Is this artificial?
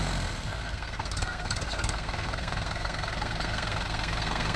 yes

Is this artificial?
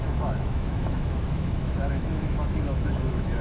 yes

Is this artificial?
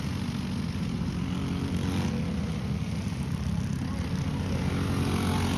no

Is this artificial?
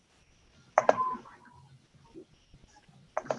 no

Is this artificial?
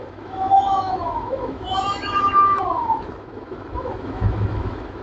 yes